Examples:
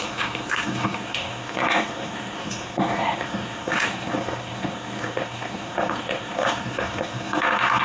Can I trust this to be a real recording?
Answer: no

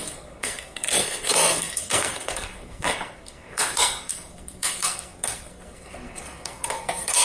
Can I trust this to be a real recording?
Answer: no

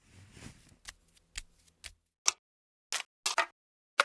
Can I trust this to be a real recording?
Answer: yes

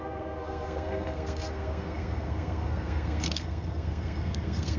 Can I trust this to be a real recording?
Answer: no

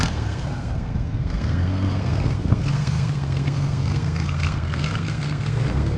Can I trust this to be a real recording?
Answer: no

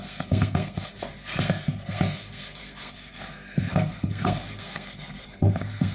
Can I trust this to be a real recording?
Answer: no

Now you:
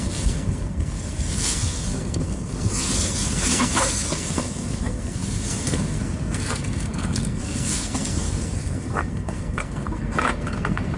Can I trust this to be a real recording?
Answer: no